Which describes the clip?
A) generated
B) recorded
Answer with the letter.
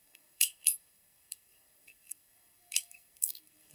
A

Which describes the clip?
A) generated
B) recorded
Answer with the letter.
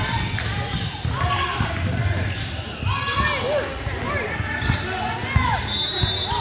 B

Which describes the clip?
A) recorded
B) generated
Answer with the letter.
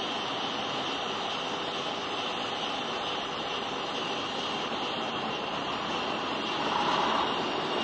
A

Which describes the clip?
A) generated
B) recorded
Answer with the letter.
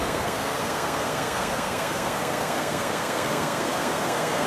A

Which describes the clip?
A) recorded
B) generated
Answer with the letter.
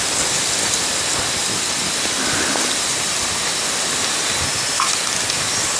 A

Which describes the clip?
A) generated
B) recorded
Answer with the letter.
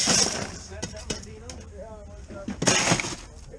B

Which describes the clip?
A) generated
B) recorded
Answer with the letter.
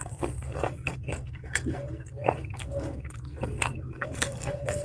A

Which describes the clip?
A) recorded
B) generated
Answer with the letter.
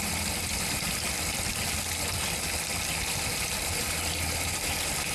A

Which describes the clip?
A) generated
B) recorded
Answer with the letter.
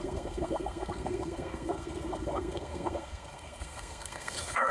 A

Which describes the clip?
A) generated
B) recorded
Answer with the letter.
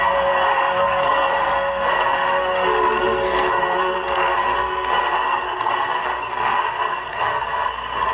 A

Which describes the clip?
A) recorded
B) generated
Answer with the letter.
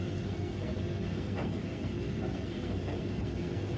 B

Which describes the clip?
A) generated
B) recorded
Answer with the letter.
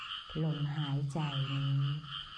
B